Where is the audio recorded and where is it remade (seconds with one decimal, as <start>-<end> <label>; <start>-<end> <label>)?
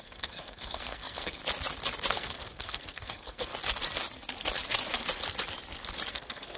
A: 0.0-1.4 remade; 1.4-2.1 recorded; 2.1-3.5 remade; 3.5-6.1 recorded; 6.1-6.6 remade